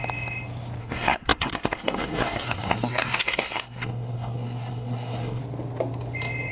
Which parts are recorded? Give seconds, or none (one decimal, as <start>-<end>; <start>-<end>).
0.0-0.8; 5.4-6.5